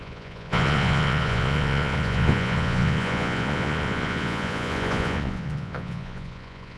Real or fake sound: fake